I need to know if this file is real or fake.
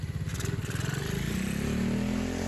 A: real